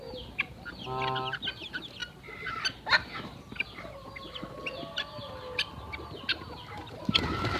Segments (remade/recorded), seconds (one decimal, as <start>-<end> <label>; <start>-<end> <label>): 0.0-7.6 recorded